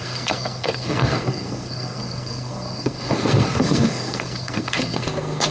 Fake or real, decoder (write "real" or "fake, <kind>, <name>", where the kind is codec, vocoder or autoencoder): fake, codec, SNAC